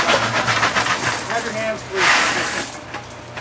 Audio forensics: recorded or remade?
recorded